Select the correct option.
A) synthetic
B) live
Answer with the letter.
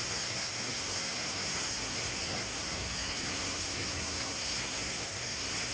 A